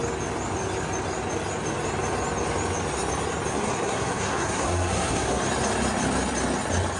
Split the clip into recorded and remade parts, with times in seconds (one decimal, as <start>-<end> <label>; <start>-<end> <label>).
0.0-3.5 recorded; 3.5-5.4 remade; 5.4-7.0 recorded